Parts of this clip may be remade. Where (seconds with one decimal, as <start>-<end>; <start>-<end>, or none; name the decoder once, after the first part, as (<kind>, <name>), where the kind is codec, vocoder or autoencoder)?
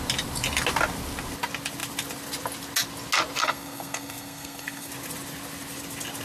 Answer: 3.4-4.9 (codec, SNAC)